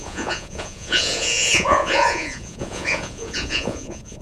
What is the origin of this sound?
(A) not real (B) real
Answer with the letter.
A